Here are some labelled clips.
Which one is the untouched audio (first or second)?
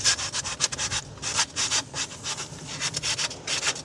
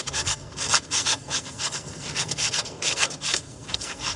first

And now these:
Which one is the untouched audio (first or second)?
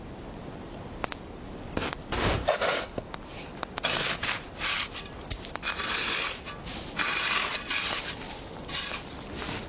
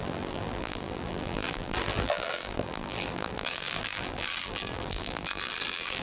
first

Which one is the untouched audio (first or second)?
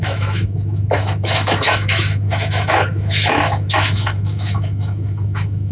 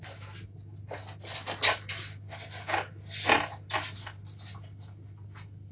second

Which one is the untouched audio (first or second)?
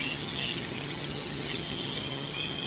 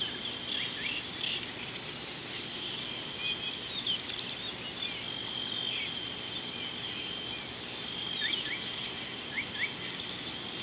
second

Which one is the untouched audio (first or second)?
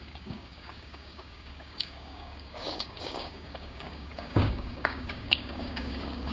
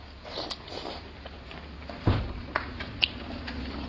second